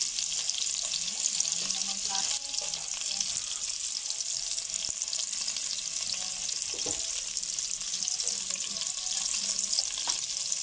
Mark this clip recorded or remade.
recorded